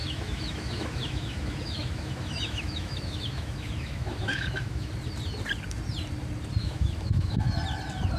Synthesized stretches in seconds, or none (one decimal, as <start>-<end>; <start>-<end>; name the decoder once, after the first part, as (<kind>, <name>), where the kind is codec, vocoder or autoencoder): 0.0-4.9 (autoencoder, DAC-VAE); 6.6-7.6